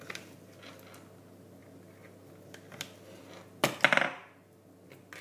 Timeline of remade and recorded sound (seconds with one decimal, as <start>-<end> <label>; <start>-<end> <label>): 0.0-5.2 recorded